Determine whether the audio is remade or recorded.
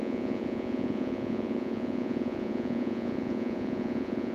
remade